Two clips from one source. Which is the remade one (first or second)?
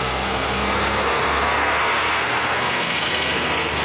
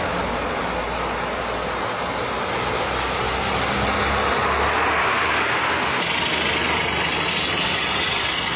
first